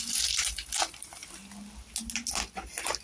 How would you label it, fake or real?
real